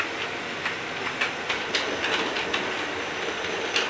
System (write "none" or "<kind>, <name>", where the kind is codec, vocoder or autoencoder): none